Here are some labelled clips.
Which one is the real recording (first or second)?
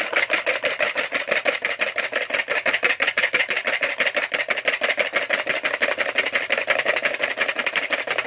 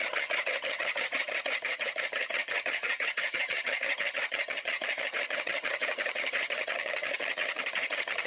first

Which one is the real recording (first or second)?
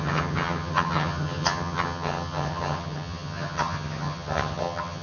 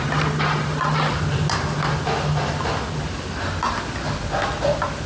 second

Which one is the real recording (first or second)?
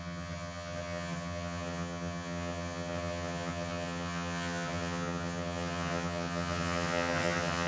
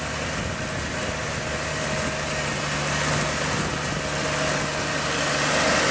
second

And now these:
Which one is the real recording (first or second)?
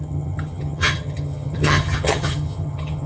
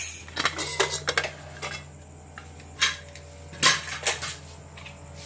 second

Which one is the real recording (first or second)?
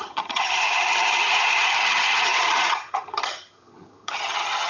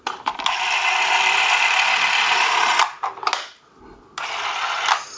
second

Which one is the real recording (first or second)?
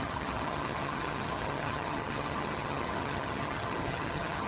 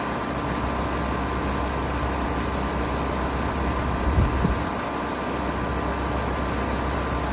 second